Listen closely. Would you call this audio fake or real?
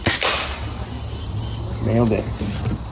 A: real